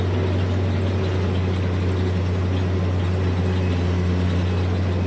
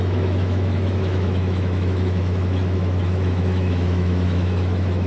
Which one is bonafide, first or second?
first